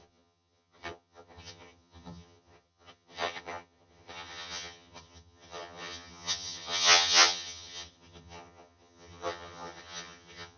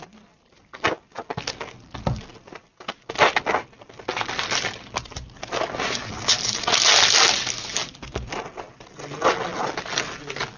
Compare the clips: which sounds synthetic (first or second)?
first